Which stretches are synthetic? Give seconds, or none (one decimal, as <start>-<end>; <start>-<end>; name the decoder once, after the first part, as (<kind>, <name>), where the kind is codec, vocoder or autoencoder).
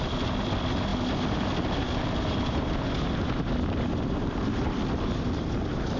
none